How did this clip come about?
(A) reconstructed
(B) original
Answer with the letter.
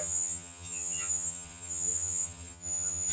A